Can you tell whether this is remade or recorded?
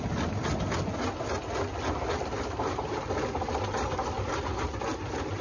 recorded